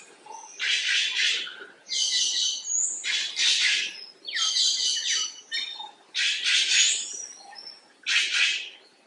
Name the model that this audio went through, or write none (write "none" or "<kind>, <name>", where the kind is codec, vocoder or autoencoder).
none